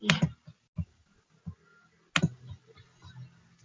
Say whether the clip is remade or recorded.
recorded